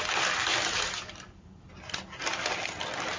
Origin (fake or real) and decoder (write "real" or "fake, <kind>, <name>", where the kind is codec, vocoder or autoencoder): real